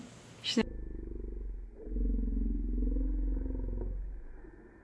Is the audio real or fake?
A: real